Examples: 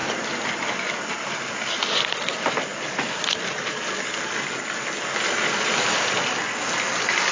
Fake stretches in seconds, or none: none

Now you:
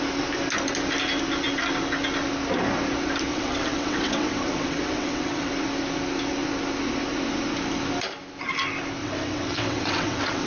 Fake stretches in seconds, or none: 3.3-5.5 (vocoder, WaveNeXt); 9.0-10.5

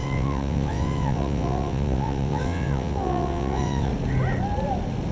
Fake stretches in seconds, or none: 0.0-3.9 (vocoder, WaveNeXt)

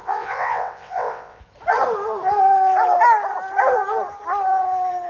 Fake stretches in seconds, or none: 0.0-1.4 (vocoder, WaveNeXt)